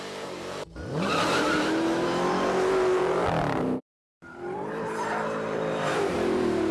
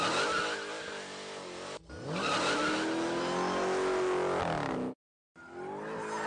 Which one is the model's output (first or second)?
first